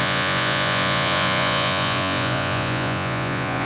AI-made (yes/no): yes